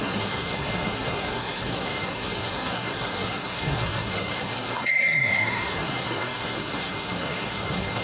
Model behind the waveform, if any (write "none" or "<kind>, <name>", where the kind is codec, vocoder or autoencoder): codec, SNAC